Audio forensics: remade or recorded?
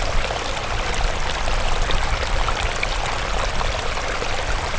recorded